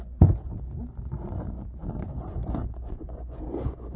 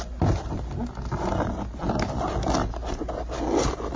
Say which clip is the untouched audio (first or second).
second